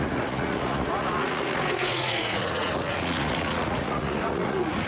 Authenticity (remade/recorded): remade